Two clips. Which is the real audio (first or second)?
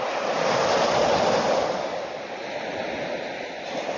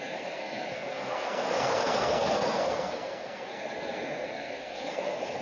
first